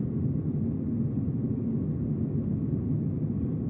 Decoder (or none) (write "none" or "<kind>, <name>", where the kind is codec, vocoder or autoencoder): none